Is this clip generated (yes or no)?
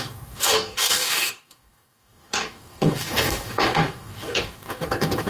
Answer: yes